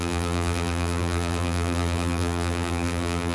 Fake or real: fake